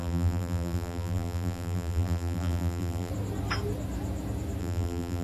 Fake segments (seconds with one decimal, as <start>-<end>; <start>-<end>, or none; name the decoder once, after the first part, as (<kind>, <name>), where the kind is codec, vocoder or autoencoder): 0.0-3.1 (vocoder, BigVGAN v2); 4.6-5.2